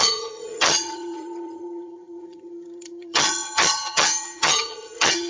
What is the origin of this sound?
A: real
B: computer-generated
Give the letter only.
B